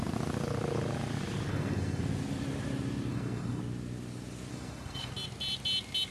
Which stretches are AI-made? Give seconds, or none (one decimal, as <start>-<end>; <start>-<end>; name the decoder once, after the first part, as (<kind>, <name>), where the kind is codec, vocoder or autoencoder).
1.5-2.0 (codec, SNAC); 3.1-3.6; 4.5-5.1